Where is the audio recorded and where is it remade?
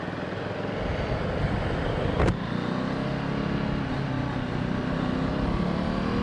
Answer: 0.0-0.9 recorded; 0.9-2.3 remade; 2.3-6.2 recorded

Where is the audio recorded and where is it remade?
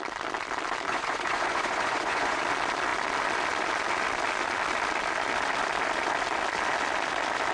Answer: 0.0-0.9 recorded; 0.9-2.4 remade; 2.4-7.5 recorded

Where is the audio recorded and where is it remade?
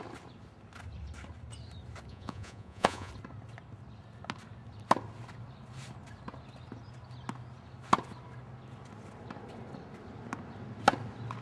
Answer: 0.0-2.1 recorded; 2.1-3.1 remade; 3.1-11.4 recorded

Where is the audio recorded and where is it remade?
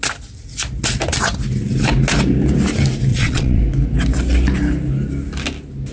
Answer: 0.0-3.1 recorded; 3.1-3.6 remade; 3.6-5.9 recorded